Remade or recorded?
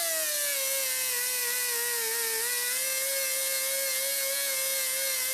recorded